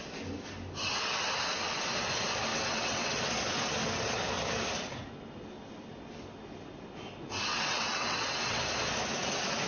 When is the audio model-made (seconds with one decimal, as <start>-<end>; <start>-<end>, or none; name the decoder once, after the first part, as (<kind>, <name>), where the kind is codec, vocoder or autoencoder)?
2.5-3.1 (vocoder, WaveNeXt); 7.5-8.6